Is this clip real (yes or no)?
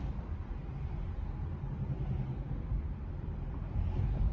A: yes